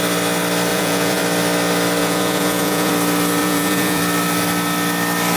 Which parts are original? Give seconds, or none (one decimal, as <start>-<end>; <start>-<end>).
0.0-0.7; 1.2-2.0; 2.9-3.4; 4.0-5.4